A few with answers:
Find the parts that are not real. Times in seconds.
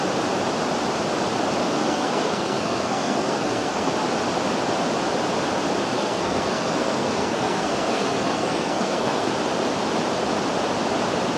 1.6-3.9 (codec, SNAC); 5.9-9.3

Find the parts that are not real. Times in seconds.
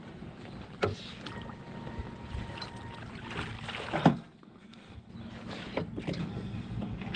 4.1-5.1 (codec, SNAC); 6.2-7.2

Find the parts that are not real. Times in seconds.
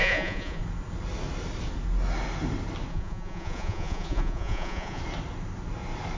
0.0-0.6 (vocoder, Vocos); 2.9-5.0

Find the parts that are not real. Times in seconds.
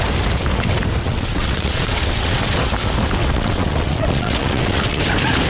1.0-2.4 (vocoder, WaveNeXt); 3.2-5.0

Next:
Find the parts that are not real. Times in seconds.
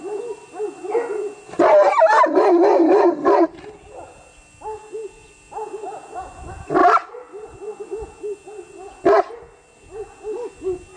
none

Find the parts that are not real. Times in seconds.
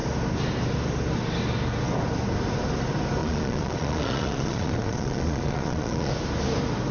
3.2-6.1 (vocoder, Vocos)